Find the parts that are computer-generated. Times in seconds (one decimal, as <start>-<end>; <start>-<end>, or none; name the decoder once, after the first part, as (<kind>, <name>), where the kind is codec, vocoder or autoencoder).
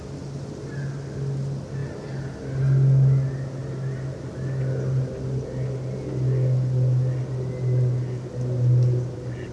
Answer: none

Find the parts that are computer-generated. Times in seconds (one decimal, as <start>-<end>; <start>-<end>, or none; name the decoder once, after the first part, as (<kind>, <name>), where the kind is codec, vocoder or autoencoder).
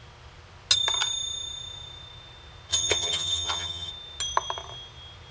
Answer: 2.7-3.9 (vocoder, HiFi-GAN)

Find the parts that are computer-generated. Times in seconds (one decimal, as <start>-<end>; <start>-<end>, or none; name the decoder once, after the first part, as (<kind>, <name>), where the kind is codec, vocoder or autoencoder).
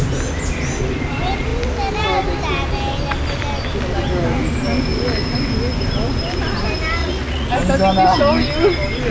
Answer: 7.0-7.5 (vocoder, Vocos)